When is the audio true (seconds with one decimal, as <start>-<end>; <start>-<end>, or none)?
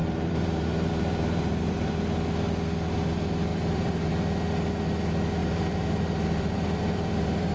1.9-3.5; 4.1-5.4